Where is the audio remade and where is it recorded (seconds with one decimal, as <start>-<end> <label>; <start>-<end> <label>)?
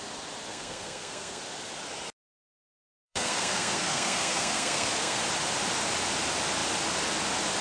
0.0-0.5 recorded; 0.5-1.4 remade; 1.4-2.7 recorded; 2.7-5.2 remade; 5.2-7.6 recorded